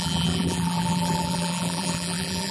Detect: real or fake fake